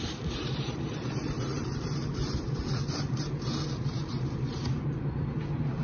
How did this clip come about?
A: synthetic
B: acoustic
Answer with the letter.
A